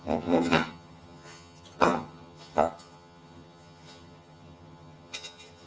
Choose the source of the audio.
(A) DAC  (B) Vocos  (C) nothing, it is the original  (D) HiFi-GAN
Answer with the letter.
D